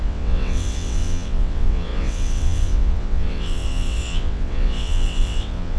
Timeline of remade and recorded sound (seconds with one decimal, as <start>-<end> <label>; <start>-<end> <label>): 0.0-5.8 remade